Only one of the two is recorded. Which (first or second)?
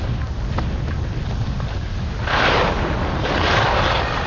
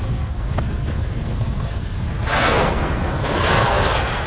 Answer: first